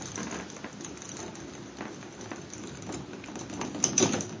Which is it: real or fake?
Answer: real